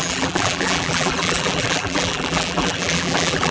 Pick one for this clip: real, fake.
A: fake